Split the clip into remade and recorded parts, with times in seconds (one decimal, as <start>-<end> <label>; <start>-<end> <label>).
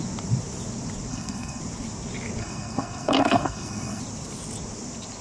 0.0-1.1 recorded; 1.1-1.6 remade; 1.6-2.4 recorded; 2.4-4.0 remade; 4.0-5.2 recorded